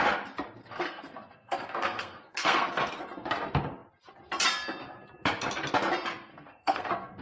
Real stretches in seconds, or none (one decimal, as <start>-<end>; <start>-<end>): 0.0-0.6; 3.0-6.3